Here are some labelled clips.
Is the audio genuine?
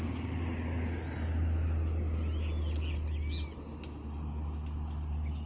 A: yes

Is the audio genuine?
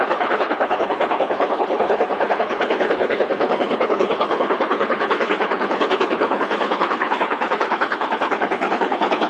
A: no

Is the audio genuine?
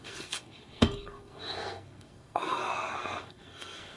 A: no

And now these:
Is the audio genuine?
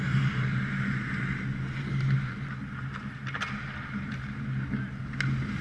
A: yes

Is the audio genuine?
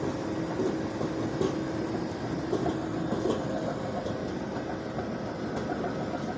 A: yes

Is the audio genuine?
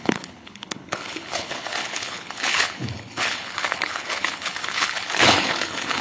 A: no